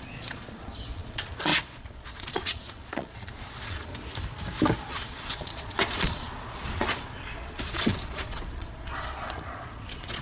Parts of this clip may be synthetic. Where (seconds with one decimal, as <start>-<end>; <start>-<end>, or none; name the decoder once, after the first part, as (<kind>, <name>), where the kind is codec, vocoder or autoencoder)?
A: 0.0-3.9 (vocoder, Vocos); 4.9-10.2